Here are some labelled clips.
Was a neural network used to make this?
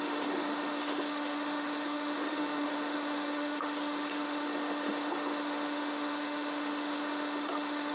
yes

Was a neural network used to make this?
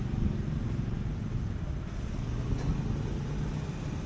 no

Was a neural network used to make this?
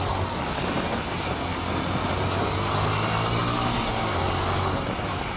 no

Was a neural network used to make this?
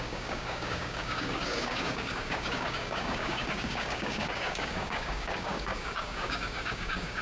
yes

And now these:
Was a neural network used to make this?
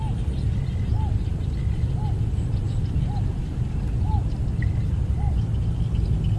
no